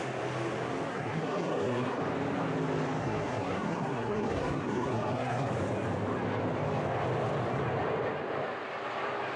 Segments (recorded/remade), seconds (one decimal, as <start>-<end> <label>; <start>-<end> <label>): 0.0-0.9 recorded; 0.9-2.0 remade; 2.0-3.0 recorded; 3.0-5.5 remade; 5.5-9.4 recorded